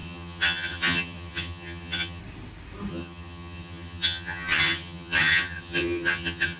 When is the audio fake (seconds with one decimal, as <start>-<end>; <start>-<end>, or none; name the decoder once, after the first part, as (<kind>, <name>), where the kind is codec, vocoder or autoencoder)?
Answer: 0.0-2.2 (vocoder, HiFi-GAN); 2.9-6.6